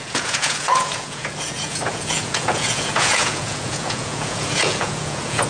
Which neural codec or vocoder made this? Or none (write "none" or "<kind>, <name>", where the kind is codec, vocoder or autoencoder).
vocoder, Vocos